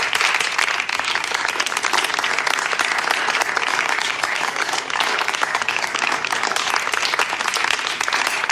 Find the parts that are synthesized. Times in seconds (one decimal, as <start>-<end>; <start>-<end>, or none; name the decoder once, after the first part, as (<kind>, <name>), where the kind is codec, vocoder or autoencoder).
0.9-1.5 (codec, DAC); 3.7-6.7